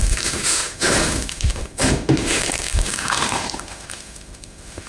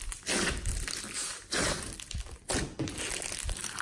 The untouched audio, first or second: second